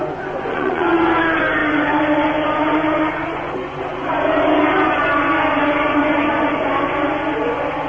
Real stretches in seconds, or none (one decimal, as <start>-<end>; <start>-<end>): none